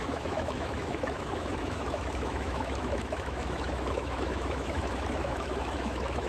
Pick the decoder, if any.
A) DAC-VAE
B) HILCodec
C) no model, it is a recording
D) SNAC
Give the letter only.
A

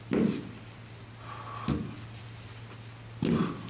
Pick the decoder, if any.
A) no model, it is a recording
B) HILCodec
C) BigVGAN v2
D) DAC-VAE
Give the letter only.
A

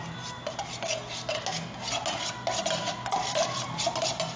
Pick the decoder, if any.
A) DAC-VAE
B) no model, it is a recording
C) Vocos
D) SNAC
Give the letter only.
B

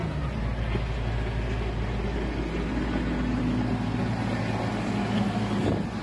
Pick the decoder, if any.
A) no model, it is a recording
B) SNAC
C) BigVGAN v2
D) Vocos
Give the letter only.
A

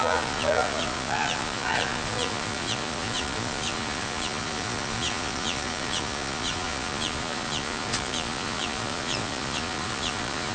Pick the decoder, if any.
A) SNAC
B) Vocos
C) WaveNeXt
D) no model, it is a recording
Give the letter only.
B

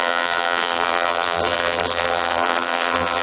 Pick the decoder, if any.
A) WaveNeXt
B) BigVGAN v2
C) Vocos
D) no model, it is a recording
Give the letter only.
B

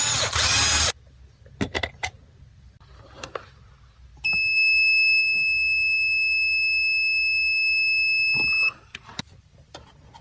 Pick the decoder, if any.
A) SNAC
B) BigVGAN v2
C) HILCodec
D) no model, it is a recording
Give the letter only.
D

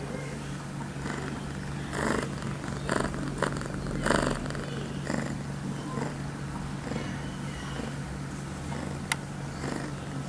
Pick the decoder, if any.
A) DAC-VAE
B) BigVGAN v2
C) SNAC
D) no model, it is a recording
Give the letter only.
D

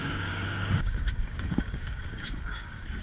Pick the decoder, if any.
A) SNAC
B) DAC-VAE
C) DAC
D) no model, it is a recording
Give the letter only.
C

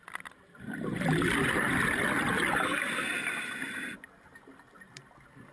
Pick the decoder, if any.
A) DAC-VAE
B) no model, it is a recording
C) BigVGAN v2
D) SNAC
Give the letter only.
B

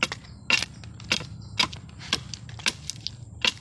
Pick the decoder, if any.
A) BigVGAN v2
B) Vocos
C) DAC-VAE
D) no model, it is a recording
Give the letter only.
D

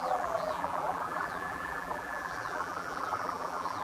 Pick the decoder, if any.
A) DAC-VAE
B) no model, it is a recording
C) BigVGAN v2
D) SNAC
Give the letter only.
C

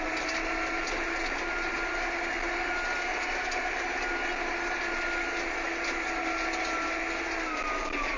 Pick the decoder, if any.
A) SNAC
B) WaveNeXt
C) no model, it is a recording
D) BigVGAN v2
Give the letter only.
C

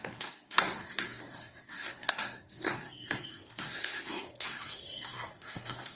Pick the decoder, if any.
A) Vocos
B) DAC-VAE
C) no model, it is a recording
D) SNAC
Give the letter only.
D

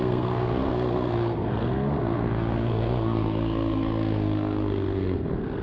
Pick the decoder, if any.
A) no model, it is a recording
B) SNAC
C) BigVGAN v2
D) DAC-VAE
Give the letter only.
B